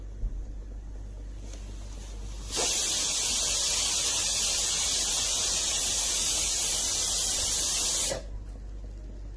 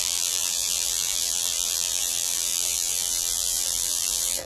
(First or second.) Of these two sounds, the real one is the first